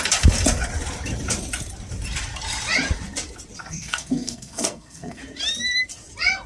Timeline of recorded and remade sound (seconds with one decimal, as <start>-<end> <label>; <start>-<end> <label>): 0.0-3.6 recorded; 3.6-5.2 remade; 5.2-6.5 recorded